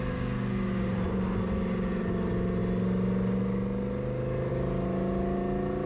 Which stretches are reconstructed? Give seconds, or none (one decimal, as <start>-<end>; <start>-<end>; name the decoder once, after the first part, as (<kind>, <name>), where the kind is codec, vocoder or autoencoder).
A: none